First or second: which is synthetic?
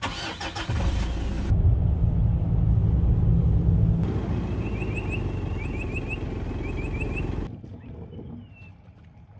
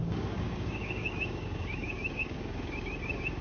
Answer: second